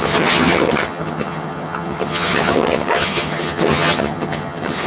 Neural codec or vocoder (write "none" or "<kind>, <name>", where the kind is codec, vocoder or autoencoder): vocoder, HiFi-GAN